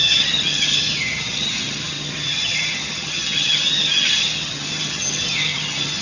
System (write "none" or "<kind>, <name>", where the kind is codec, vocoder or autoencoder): vocoder, HiFi-GAN